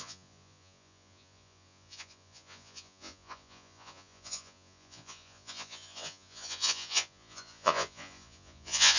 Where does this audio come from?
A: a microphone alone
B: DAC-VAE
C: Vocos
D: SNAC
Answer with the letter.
C